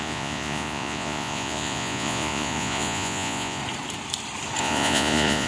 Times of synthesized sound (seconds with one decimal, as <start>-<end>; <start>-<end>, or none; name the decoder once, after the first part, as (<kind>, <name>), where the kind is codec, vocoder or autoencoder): 0.0-3.6 (vocoder, Vocos); 4.6-5.5